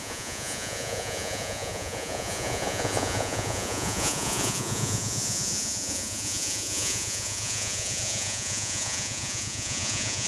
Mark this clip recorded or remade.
remade